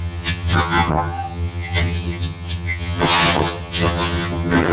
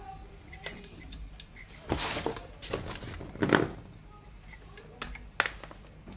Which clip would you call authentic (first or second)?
second